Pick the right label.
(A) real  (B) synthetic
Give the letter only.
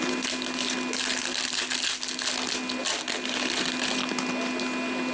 A